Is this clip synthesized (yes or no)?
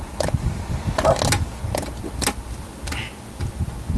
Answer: no